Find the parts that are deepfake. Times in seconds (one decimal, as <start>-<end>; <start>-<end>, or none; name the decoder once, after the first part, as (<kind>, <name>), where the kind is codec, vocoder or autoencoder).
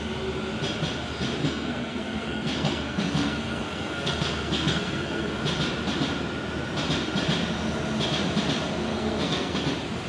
1.4-5.4 (codec, SNAC); 8.9-9.7